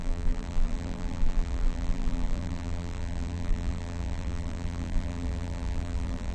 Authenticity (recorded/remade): remade